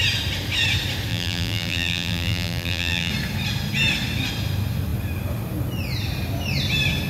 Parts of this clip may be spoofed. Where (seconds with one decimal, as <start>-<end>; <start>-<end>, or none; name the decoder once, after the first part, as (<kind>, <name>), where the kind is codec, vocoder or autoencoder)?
1.1-3.1 (vocoder, BigVGAN v2)